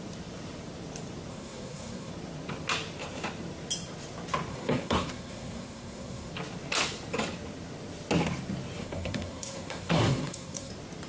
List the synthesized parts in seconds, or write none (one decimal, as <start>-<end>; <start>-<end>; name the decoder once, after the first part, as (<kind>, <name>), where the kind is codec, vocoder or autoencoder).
1.3-2.1 (codec, SNAC); 4.5-6.3; 8.8-10.7